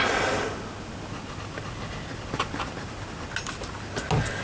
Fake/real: real